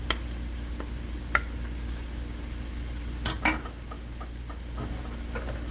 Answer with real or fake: real